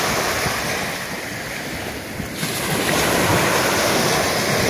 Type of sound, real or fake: real